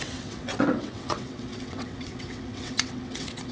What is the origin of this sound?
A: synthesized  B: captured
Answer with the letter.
A